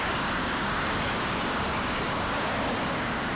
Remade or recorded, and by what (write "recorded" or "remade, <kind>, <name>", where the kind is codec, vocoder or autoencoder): remade, codec, DAC